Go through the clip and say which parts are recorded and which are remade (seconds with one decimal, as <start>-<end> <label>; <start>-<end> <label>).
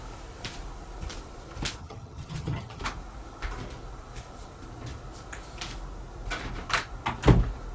0.0-1.8 recorded; 1.8-2.8 remade; 2.8-7.7 recorded